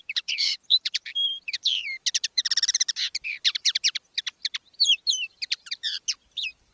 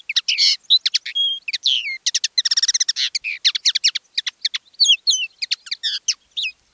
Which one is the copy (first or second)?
first